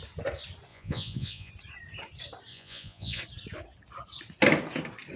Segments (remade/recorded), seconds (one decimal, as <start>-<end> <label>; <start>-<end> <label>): 0.0-0.7 recorded; 0.7-1.5 remade; 1.5-2.5 recorded; 2.5-3.2 remade; 3.2-5.2 recorded